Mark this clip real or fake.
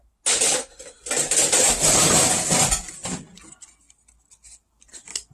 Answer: real